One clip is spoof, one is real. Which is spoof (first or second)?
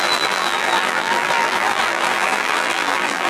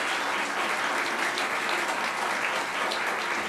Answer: first